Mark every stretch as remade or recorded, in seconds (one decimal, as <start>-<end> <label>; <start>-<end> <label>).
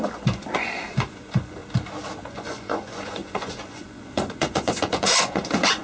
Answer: 0.0-1.6 remade; 1.6-2.2 recorded; 2.2-5.8 remade